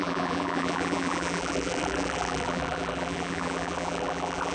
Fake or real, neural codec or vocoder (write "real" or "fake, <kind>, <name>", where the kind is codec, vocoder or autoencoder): fake, vocoder, BigVGAN v2